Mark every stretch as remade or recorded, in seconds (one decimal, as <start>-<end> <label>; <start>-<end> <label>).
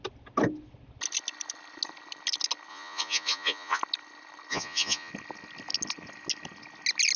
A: 0.0-2.7 recorded; 2.7-3.8 remade; 3.8-4.5 recorded; 4.5-5.1 remade; 5.1-7.2 recorded